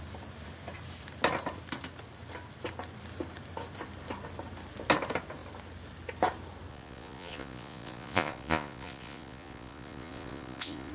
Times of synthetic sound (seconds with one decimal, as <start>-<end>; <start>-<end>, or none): 6.7-10.9